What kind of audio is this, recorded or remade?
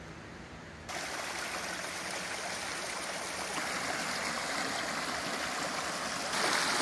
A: recorded